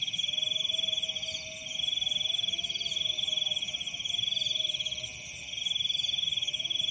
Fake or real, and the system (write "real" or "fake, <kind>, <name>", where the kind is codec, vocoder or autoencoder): real